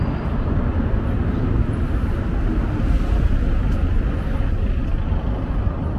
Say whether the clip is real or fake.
real